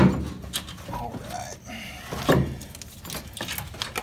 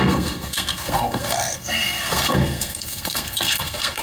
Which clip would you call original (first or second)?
first